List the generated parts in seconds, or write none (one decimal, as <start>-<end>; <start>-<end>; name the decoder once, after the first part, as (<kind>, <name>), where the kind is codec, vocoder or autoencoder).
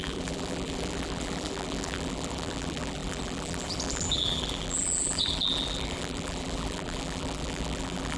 0.0-8.2 (vocoder, BigVGAN v2)